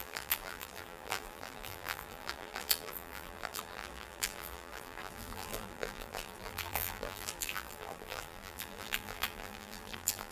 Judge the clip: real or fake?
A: fake